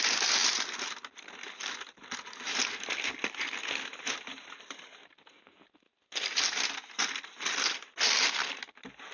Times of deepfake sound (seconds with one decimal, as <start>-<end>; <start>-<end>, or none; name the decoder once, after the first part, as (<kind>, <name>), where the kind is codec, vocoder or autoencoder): none